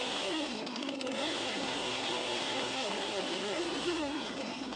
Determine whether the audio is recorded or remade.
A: remade